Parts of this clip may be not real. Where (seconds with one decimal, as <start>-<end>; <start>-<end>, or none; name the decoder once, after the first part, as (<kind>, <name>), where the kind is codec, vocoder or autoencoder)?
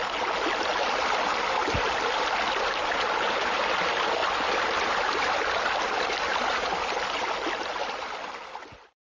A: none